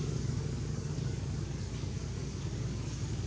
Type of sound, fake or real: fake